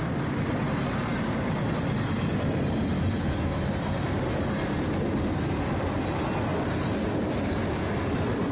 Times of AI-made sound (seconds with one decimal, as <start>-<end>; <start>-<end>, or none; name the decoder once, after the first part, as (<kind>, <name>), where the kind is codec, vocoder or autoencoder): none

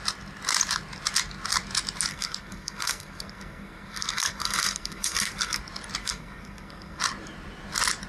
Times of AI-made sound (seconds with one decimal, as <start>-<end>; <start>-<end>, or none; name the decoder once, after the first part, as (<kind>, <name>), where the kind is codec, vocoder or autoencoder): 2.1-5.6 (codec, SNAC); 6.0-7.0

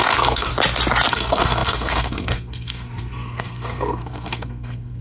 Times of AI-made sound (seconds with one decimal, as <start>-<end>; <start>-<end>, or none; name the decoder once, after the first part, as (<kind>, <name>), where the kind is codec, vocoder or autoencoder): 0.0-0.5 (codec, SNAC); 1.1-5.0

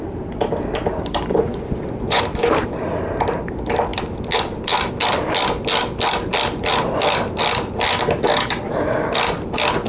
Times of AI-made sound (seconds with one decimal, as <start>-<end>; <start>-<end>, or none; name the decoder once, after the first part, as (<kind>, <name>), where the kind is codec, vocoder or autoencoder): 1.3-2.2 (vocoder, Vocos)

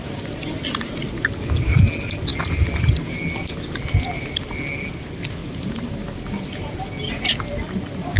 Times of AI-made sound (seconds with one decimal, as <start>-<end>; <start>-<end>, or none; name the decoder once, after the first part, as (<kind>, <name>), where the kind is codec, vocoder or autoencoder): 5.4-6.9 (vocoder, BigVGAN v2)

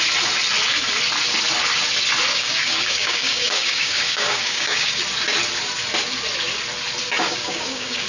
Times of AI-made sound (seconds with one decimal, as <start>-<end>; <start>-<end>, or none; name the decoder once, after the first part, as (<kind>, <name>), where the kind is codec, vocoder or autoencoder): 2.3-5.0 (codec, DAC); 7.2-8.1